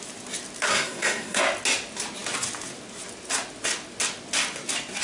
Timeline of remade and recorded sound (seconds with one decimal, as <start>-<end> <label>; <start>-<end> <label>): 0.0-0.7 recorded; 0.7-1.4 remade; 1.4-5.0 recorded

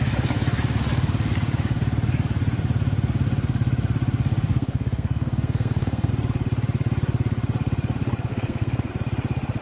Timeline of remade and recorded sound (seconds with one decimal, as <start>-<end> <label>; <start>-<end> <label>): 0.0-4.5 recorded; 4.5-6.1 remade; 6.1-8.3 recorded; 8.3-8.9 remade; 8.9-9.6 recorded

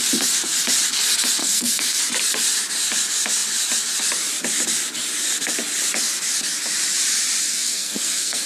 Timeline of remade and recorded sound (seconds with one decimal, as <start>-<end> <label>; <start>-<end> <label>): 0.0-1.4 recorded; 1.4-2.0 remade; 2.0-7.4 recorded; 7.4-8.5 remade

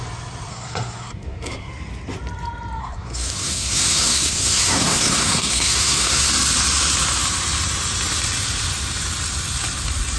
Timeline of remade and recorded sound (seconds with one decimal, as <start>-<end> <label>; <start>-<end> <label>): 0.0-0.5 recorded; 0.5-1.7 remade; 1.7-2.8 recorded; 2.8-6.3 remade; 6.3-10.2 recorded